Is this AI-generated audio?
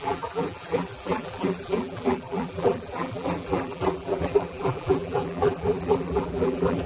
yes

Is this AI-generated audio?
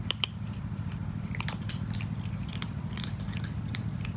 yes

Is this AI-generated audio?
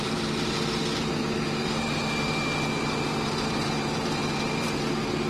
yes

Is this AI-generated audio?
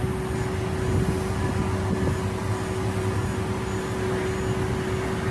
no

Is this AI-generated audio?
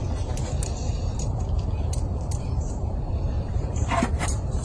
yes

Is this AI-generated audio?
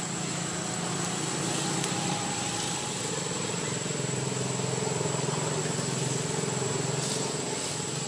no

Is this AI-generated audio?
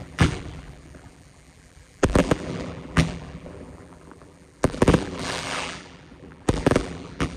yes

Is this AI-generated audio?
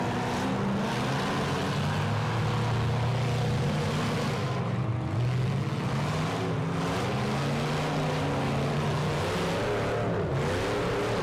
no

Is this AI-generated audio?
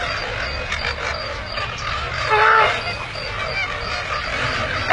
no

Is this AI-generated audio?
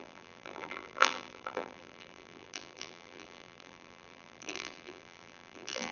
yes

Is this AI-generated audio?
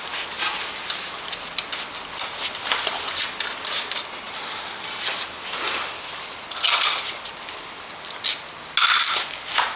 no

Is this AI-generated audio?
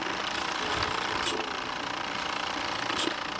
no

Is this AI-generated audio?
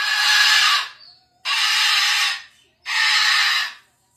no